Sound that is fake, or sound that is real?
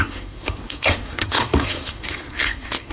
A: fake